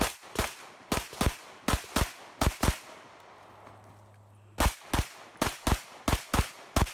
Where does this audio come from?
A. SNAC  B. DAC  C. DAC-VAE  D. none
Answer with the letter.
D